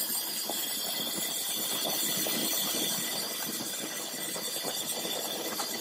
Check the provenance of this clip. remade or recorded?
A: recorded